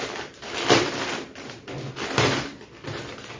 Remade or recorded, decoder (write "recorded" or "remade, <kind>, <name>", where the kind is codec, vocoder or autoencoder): recorded